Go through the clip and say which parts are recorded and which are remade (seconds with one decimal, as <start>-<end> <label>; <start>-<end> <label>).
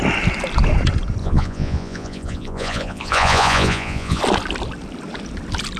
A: 0.0-1.2 recorded; 1.2-4.2 remade; 4.2-5.8 recorded